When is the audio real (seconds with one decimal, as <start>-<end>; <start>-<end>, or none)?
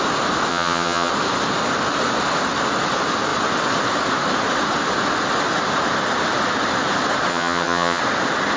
0.0-0.5; 1.1-7.3; 8.0-8.6